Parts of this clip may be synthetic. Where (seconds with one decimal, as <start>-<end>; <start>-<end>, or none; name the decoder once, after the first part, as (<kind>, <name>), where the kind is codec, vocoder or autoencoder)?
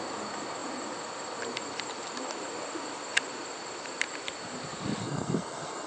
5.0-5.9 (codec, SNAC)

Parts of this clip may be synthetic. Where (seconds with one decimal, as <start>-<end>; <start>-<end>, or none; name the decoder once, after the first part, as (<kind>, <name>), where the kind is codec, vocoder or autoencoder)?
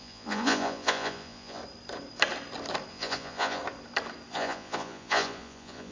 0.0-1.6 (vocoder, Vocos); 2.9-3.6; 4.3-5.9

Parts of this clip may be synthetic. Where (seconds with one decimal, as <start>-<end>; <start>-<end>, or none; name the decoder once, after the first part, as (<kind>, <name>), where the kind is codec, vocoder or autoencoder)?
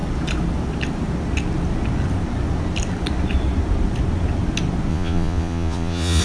4.9-6.2 (vocoder, Vocos)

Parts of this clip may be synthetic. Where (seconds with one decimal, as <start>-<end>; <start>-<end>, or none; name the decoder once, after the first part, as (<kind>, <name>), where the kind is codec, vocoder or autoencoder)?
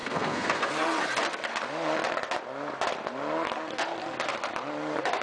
0.0-0.7 (codec, SNAC)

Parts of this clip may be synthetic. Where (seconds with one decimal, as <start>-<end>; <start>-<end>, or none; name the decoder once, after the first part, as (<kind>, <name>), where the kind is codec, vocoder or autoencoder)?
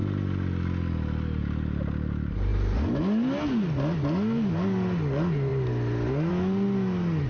none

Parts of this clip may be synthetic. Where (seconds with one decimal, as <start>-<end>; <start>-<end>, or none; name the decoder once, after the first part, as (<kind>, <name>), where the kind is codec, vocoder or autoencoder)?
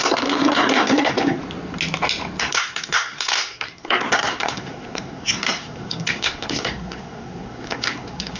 0.0-1.4 (codec, SNAC); 2.4-8.4